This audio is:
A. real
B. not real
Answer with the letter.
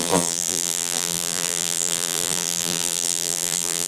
B